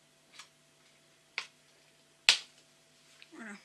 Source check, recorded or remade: recorded